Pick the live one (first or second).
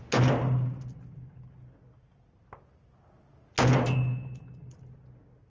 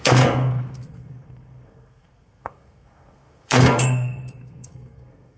first